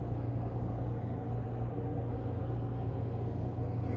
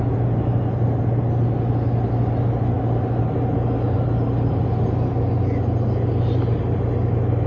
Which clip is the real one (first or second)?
second